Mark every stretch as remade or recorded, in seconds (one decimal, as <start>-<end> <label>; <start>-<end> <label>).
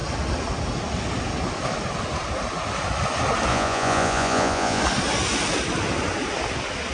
0.0-3.5 recorded; 3.5-4.8 remade; 4.8-6.9 recorded